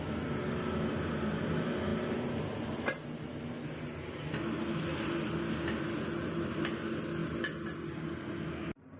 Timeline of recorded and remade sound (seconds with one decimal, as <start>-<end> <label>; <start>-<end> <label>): 0.0-9.0 recorded